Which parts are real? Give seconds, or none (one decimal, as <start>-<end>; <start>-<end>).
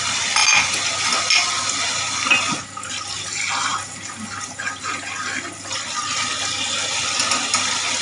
0.0-8.0